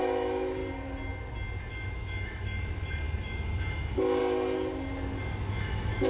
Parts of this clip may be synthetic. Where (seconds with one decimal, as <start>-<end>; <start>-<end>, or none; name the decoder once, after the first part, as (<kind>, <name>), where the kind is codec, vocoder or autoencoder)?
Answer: 0.0-0.6 (autoencoder, DAC-VAE); 1.7-4.2; 5.2-6.1

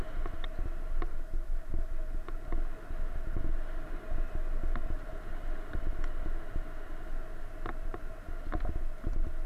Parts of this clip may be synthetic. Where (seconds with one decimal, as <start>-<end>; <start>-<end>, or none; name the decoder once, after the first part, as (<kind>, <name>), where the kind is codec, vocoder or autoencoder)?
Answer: none

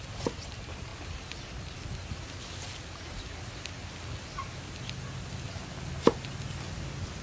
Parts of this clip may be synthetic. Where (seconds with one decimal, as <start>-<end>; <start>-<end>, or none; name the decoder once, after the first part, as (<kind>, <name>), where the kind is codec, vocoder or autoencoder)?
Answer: none

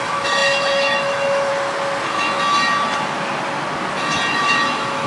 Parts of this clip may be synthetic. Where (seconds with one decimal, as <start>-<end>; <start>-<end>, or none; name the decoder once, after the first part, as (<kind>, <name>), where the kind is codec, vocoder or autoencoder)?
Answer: 0.0-1.5 (autoencoder, DAC-VAE); 4.3-5.1

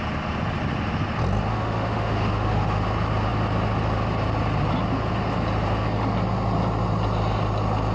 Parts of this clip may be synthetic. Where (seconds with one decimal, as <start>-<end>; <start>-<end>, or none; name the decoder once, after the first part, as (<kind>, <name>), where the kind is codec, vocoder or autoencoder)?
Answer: 1.5-2.8 (autoencoder, DAC-VAE)

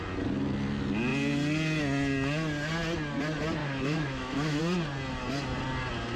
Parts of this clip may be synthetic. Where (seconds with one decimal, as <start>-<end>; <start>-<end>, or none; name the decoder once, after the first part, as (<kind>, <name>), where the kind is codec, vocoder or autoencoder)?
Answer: 3.6-4.6 (autoencoder, DAC-VAE)